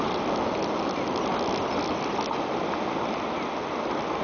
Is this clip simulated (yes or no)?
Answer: no